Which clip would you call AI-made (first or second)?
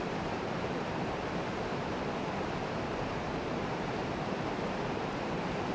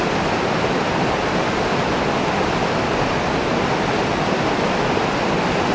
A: first